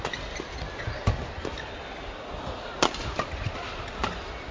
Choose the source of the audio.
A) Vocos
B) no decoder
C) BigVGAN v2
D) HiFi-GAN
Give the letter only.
B